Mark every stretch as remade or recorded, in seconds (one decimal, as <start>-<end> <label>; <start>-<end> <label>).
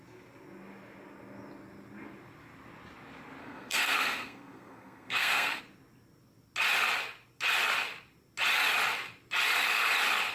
0.0-3.4 recorded; 3.4-5.6 remade; 5.6-10.3 recorded